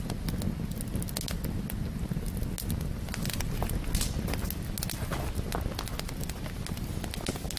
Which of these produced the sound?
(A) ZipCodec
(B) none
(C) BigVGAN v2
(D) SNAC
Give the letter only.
B